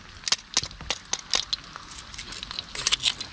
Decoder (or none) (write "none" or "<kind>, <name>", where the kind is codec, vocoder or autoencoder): none